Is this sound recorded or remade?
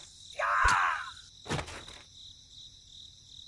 recorded